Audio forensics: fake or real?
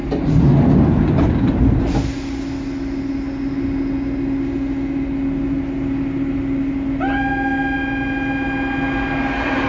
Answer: real